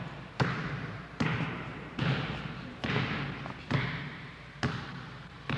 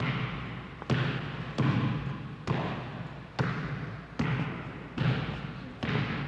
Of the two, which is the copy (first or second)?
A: first